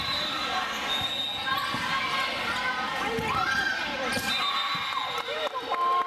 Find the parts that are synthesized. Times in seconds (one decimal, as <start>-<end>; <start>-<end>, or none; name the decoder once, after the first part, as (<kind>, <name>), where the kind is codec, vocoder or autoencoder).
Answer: none